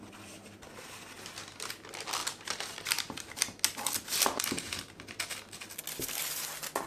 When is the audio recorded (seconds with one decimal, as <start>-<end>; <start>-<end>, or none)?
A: 0.0-6.9